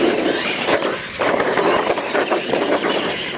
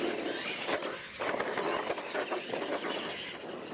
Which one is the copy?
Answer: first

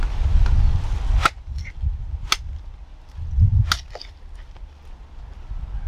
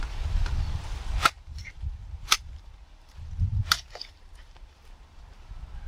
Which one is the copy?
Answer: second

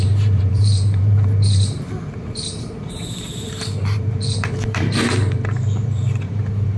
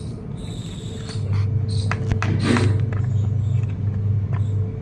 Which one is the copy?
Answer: first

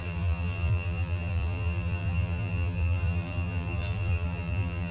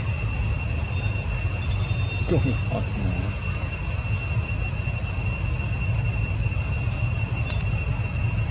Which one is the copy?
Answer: first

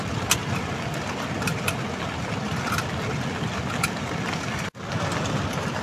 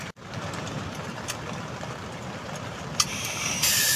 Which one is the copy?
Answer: second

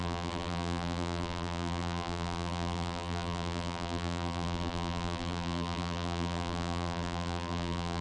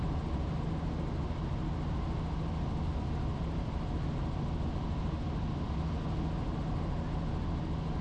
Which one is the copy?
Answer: first